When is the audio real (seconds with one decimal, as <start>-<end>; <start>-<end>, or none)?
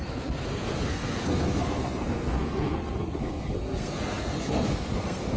none